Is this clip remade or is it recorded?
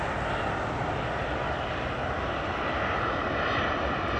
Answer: recorded